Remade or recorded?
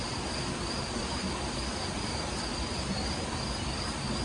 recorded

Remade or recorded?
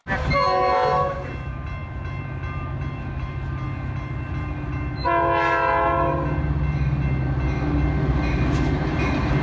recorded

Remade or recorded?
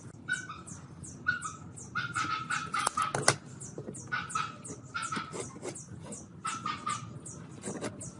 recorded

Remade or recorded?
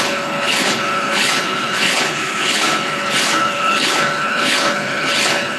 remade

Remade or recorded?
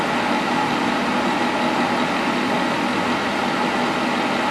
recorded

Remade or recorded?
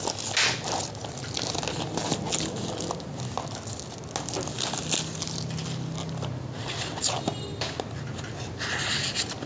recorded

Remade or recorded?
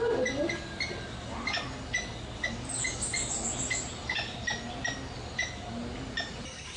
recorded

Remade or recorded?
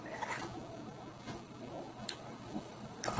remade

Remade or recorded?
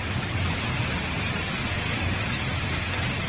recorded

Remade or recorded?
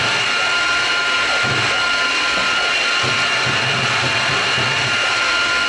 recorded